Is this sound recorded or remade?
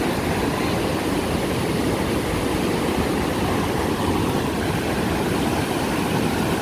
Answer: recorded